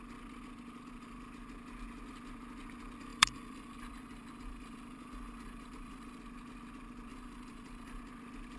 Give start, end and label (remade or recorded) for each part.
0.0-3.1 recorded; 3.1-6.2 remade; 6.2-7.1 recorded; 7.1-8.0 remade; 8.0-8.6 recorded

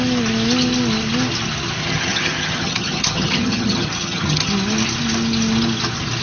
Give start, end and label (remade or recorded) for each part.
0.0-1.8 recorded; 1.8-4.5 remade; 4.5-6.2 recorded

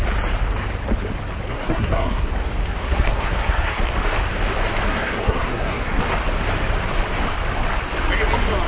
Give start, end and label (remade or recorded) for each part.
0.0-1.5 recorded; 1.5-2.3 remade; 2.3-2.8 recorded; 2.8-3.9 remade; 3.9-4.9 recorded; 4.9-6.0 remade; 6.0-8.7 recorded